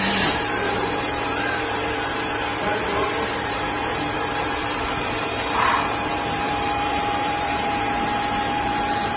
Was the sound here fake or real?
fake